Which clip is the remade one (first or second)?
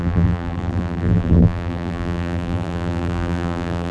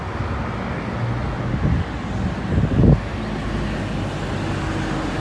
first